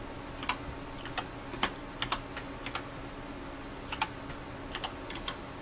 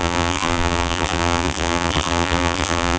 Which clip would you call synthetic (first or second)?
second